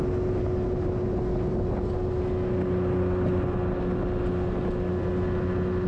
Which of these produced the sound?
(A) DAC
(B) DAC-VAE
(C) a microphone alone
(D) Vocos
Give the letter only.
C